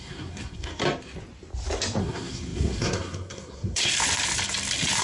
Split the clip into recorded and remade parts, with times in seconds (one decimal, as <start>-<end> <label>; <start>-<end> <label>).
0.0-0.8 remade; 0.8-2.0 recorded; 2.0-3.9 remade; 3.9-5.0 recorded